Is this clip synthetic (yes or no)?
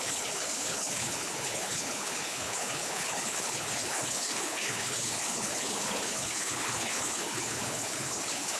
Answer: yes